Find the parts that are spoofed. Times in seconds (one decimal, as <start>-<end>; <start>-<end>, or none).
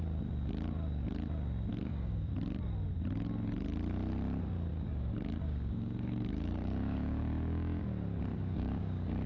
1.7-2.3; 4.7-7.8; 8.3-9.3